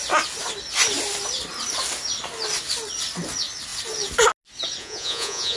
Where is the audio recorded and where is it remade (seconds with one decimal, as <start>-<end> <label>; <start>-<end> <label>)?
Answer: 0.0-4.8 recorded; 4.8-5.6 remade